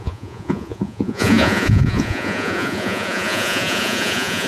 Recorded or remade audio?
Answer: remade